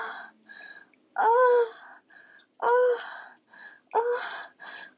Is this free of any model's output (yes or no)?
yes